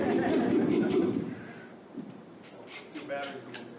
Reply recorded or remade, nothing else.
recorded